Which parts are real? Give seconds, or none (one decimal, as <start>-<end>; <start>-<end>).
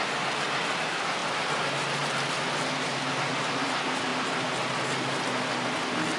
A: 0.0-6.2